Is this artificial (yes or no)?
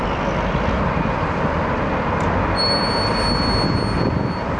no